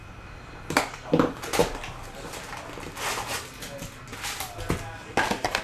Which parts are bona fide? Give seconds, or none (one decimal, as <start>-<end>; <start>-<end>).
0.8-5.6